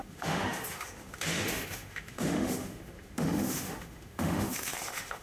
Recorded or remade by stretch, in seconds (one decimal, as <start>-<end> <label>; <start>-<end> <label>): 0.0-5.2 remade